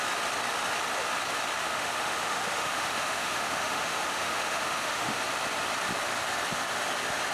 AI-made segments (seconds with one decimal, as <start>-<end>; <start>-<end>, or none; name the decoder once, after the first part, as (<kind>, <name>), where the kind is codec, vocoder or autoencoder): 1.6-5.2 (autoencoder, DAC-VAE)